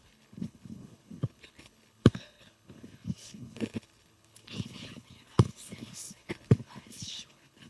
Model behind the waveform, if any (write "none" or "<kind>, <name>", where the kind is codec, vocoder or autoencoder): codec, HILCodec